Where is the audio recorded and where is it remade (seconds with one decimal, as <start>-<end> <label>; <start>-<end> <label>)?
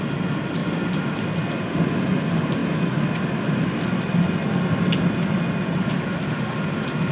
0.0-7.1 recorded